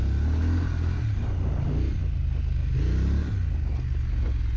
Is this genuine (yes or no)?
yes